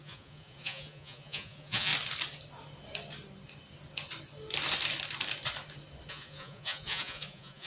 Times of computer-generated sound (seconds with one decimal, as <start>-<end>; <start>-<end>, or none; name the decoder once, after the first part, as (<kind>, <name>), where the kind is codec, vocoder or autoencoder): 0.0-1.9 (vocoder, Vocos); 6.1-7.7